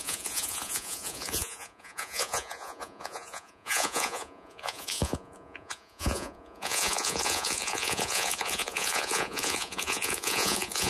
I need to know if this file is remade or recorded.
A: remade